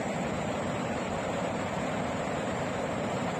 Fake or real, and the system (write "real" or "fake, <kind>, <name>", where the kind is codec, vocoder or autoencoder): fake, vocoder, BigVGAN v2